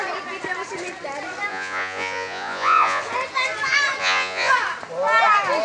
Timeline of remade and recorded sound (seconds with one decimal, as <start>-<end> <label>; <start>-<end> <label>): 0.0-1.5 recorded; 1.5-3.0 remade; 3.0-4.0 recorded; 4.0-4.5 remade; 4.5-5.6 recorded